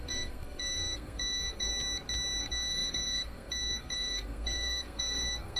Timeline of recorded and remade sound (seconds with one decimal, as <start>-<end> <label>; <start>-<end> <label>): 0.0-1.7 remade; 1.7-2.4 recorded; 2.4-5.6 remade